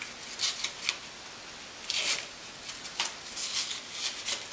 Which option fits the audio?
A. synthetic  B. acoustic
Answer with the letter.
B